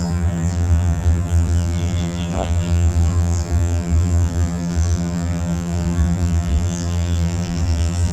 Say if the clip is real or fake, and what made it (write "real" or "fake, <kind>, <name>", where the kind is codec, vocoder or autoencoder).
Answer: fake, vocoder, BigVGAN v2